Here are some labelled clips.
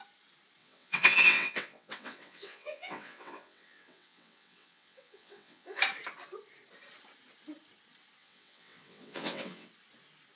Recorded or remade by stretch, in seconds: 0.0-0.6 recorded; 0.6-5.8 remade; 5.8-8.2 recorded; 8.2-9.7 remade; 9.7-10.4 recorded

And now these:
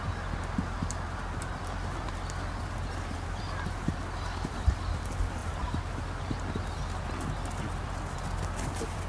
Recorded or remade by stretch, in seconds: 0.0-9.1 recorded